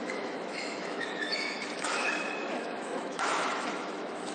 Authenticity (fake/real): fake